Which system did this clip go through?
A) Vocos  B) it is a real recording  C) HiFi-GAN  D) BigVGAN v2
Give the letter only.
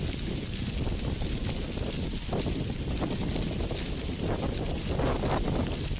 B